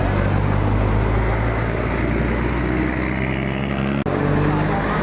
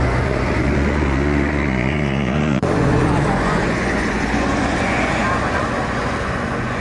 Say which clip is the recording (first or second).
first